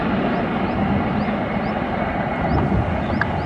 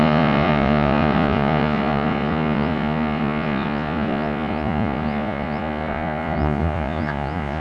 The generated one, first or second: second